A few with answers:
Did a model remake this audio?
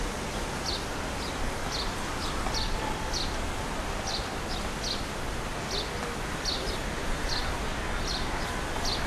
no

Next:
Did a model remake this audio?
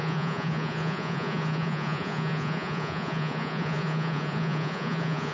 yes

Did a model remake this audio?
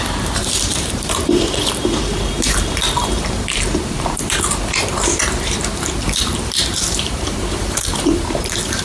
yes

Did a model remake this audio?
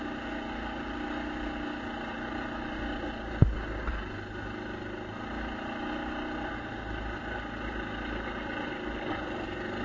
no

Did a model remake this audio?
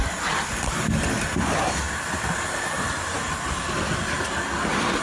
no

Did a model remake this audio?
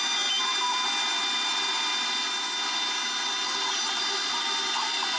no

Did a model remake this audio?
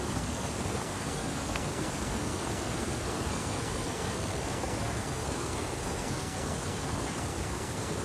yes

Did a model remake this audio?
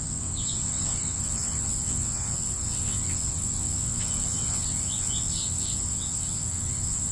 yes